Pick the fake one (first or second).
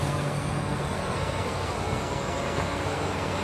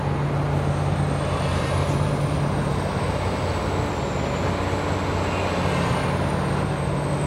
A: first